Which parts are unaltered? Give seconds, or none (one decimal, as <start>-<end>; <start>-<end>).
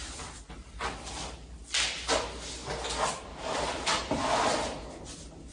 0.0-5.5